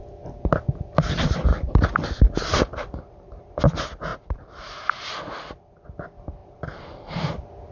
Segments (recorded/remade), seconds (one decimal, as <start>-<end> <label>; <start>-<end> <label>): 0.0-1.5 recorded; 1.5-3.4 remade; 3.4-4.1 recorded; 4.1-4.9 remade; 4.9-6.4 recorded; 6.4-7.3 remade; 7.3-7.7 recorded